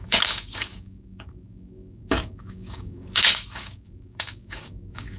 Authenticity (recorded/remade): remade